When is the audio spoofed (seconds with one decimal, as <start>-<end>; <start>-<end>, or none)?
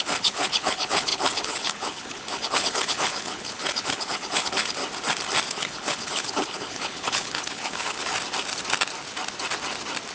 0.0-4.8; 5.5-8.1